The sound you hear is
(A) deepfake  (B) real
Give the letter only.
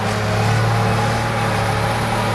B